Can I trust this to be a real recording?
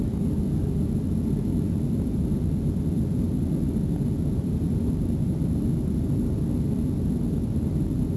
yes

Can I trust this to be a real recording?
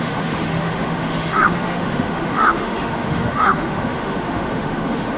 no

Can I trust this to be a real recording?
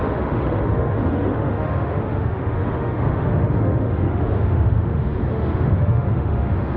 no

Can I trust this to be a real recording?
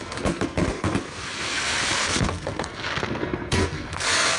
no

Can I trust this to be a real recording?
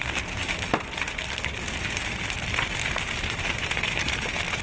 yes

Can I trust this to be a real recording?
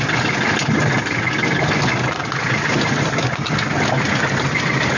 yes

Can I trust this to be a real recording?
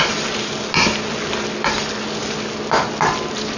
yes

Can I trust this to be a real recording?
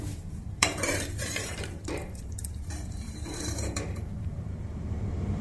no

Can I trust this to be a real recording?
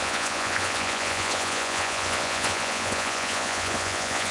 no